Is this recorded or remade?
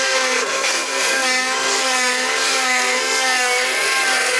remade